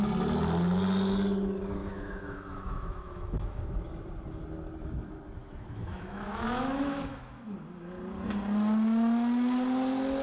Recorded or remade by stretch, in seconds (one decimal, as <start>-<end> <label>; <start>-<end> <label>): 0.0-1.8 recorded; 1.8-3.6 remade; 3.6-5.4 recorded; 5.4-7.4 remade; 7.4-10.2 recorded